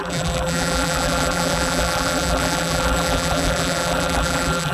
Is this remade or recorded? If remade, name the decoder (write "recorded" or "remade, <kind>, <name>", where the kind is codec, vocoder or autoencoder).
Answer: remade, vocoder, BigVGAN v2